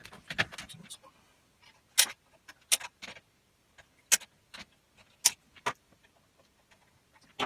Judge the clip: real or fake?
real